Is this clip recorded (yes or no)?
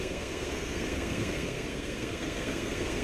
no